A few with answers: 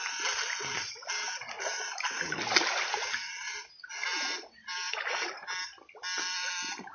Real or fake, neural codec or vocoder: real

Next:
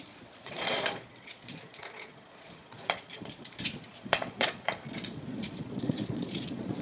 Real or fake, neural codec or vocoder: fake, vocoder, Vocos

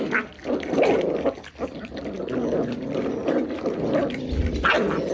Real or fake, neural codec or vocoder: real